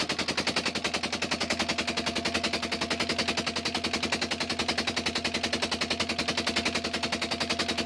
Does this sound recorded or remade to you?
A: recorded